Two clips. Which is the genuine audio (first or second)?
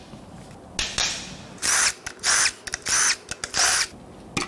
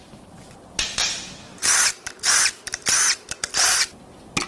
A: first